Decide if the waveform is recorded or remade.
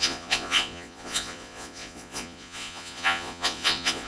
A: remade